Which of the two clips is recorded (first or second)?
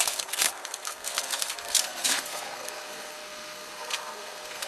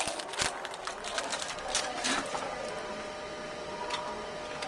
second